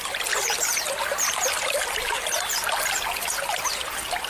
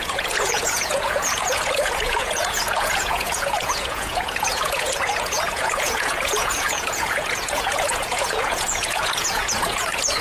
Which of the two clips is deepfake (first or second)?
second